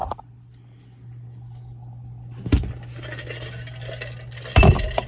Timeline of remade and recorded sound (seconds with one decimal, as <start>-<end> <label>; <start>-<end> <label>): 0.0-5.1 recorded